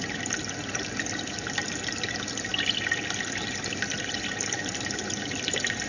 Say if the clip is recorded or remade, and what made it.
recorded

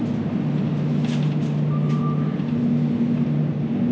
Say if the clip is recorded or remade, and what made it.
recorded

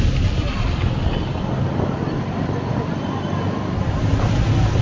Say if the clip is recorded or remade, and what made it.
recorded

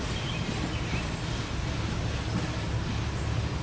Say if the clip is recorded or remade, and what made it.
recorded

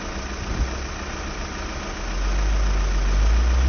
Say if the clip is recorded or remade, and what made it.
recorded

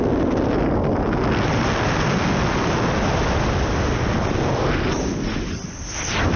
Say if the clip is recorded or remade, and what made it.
recorded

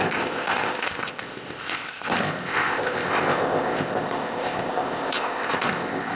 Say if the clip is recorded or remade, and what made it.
remade, codec, ZipCodec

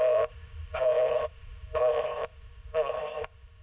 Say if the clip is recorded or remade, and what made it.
remade, codec, ZipCodec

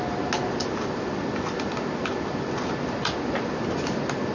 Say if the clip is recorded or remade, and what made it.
recorded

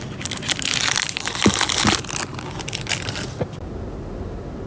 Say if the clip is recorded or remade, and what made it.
recorded